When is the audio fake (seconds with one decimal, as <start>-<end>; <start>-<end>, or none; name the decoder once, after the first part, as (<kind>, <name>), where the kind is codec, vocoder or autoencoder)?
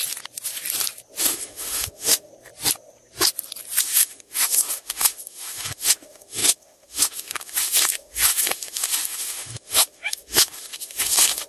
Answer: 1.2-2.3 (autoencoder, DAC-VAE); 3.8-11.5